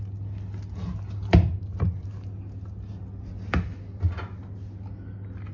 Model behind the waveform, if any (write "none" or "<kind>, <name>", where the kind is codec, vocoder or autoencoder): none